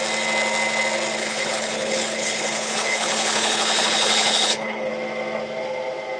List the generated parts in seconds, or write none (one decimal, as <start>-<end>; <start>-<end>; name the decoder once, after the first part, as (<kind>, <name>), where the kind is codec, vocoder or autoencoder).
1.2-4.9 (codec, HILCodec)